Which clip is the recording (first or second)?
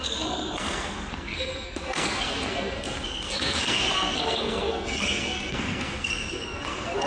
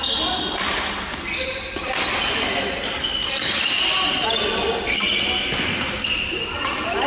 second